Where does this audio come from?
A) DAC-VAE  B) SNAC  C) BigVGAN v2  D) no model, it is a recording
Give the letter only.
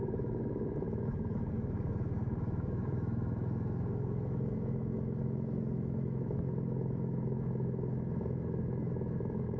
A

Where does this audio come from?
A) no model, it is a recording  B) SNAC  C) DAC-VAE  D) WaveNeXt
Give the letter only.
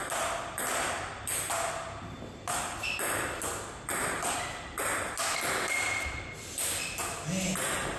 A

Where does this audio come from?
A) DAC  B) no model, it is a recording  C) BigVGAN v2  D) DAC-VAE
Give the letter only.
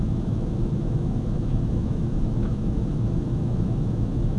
D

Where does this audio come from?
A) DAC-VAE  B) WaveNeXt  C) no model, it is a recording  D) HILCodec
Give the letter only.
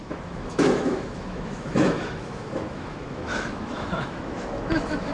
A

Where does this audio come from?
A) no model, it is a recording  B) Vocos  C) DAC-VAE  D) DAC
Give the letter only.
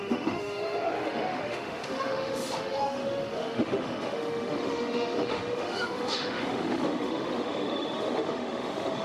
C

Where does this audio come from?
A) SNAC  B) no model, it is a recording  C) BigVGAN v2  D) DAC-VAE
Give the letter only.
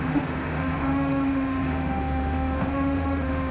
D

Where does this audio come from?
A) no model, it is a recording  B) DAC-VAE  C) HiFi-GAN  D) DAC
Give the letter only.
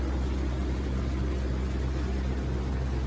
A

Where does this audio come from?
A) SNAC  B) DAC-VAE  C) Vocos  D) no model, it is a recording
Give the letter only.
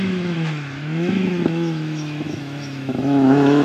B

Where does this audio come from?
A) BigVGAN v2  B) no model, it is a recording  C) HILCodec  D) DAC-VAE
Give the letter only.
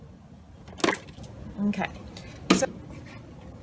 B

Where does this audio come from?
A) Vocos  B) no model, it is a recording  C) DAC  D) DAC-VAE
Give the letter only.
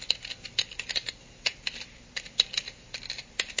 B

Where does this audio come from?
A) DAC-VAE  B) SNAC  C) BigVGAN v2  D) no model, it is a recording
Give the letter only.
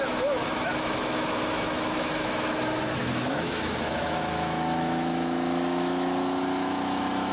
A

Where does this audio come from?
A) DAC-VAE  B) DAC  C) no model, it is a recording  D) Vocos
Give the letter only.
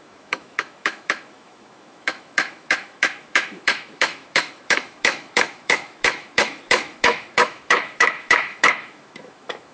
A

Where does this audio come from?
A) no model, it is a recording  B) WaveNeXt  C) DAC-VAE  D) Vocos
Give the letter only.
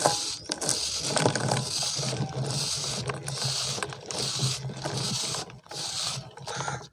A